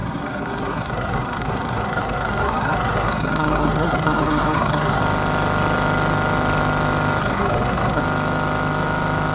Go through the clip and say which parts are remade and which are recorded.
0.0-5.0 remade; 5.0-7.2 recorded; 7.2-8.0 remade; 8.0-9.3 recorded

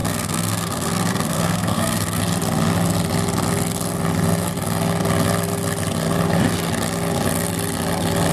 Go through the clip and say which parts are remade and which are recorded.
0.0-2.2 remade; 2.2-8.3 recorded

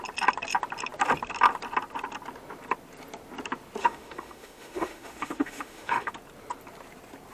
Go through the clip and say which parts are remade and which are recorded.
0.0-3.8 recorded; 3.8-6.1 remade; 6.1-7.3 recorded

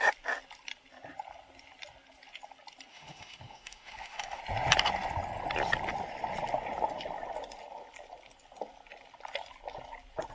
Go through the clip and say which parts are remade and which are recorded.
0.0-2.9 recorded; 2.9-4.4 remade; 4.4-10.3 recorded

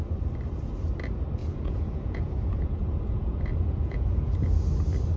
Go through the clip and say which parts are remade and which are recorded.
0.0-1.4 recorded; 1.4-4.5 remade; 4.5-5.2 recorded